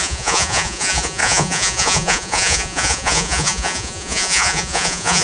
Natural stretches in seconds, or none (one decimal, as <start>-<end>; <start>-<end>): none